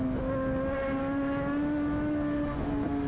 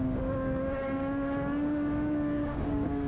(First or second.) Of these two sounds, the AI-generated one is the second